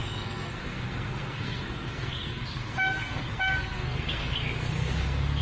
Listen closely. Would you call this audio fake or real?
fake